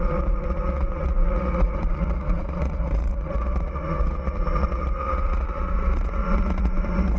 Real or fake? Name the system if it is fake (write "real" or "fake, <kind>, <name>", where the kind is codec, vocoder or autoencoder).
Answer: fake, vocoder, Vocos